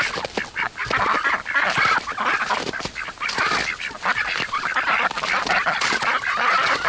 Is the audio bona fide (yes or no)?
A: yes